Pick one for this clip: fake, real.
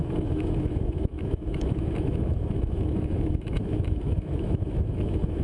fake